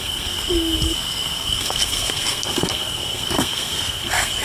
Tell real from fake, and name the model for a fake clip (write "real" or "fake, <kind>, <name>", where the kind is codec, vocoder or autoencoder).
fake, codec, SNAC